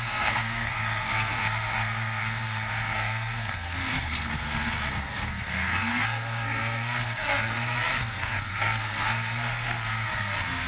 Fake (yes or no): yes